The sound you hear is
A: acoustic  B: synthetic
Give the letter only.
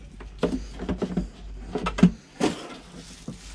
A